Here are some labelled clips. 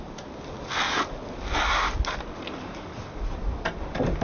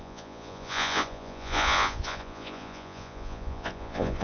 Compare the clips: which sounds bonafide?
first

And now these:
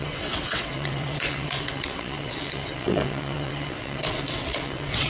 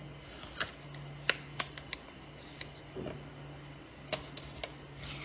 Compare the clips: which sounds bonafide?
second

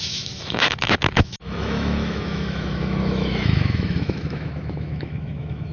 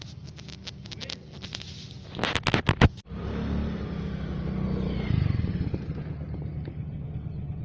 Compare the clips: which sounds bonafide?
second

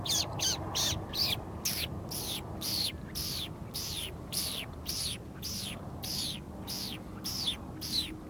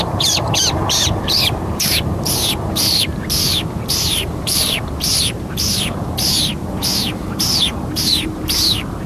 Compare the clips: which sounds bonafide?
first